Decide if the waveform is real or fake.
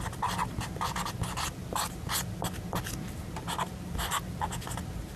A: real